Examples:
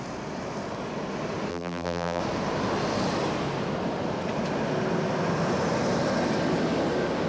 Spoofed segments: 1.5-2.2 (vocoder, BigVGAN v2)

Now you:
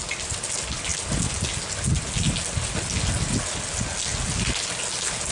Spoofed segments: none

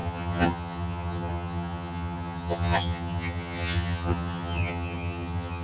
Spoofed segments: 0.0-5.6 (vocoder, HiFi-GAN)